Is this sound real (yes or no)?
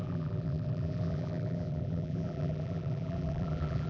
no